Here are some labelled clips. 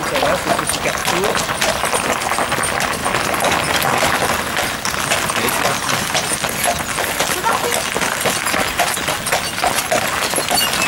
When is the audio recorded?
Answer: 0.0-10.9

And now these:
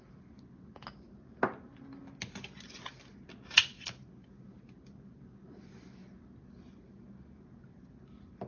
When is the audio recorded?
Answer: 0.0-8.5

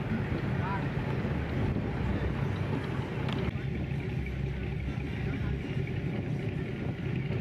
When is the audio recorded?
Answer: 0.6-1.7; 2.1-4.7

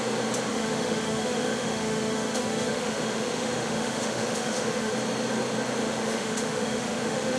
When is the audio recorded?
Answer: 0.0-0.5; 4.9-5.8

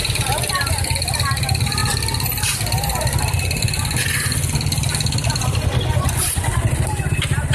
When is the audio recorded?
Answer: 0.0-7.5